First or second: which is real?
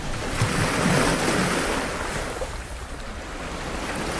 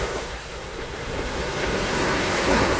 first